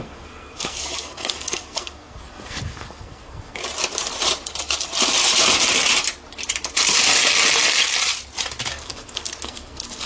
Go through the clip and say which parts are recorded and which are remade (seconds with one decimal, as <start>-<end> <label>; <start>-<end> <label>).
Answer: 0.0-3.6 remade; 3.6-8.7 recorded; 8.7-10.1 remade